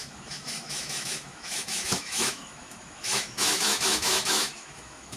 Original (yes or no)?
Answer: no